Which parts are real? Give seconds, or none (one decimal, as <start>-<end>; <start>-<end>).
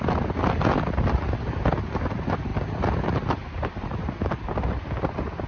0.0-5.5